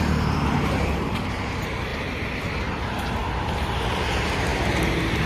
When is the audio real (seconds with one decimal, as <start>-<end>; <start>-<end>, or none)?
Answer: 0.0-1.9; 2.8-3.2; 3.8-5.3